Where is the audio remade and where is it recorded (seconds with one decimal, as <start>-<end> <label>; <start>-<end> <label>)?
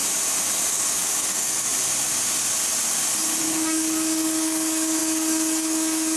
0.0-0.7 recorded; 0.7-1.7 remade; 1.7-3.4 recorded; 3.4-6.2 remade